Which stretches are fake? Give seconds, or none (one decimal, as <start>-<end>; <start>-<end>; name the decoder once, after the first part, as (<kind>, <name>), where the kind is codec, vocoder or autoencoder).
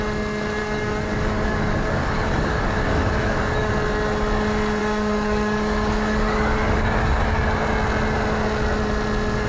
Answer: 0.6-3.7 (codec, DAC); 4.8-7.4